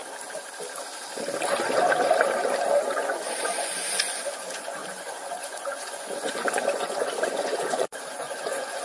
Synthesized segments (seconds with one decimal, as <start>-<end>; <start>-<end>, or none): 2.8-8.8